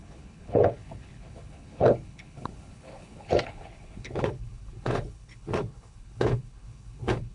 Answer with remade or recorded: remade